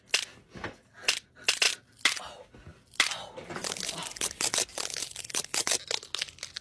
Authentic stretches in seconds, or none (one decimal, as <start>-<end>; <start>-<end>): 0.0-6.6